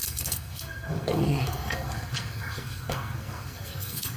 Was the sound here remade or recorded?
remade